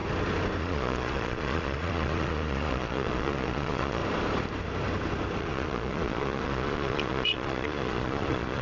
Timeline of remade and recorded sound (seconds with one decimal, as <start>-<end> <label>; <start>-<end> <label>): 0.0-0.6 recorded; 0.6-4.0 remade; 4.0-5.4 recorded; 5.4-8.6 remade

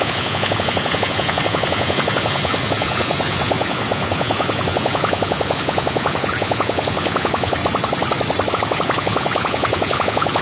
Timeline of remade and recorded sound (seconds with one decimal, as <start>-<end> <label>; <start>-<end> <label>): 0.0-7.6 remade; 7.6-8.5 recorded; 8.5-10.4 remade

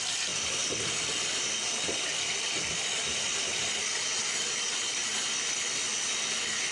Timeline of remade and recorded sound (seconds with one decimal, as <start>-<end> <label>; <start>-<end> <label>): 0.0-6.7 recorded

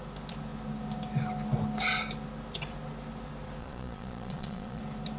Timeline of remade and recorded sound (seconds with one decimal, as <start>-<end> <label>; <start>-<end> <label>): 0.0-3.6 recorded; 3.6-4.8 remade; 4.8-5.2 recorded

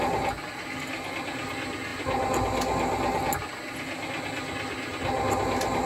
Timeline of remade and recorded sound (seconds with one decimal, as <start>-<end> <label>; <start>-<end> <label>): 0.0-5.9 recorded

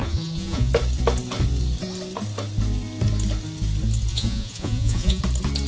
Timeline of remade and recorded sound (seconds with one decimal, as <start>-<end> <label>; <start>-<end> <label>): 0.0-0.7 remade; 0.7-4.1 recorded; 4.1-5.2 remade; 5.2-5.7 recorded